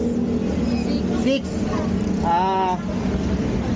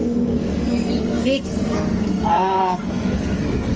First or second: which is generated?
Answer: second